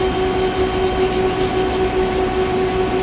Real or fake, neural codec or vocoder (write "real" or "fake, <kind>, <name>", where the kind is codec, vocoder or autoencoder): real